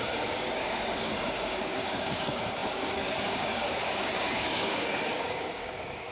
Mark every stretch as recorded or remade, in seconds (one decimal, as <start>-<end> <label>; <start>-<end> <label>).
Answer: 0.0-6.1 remade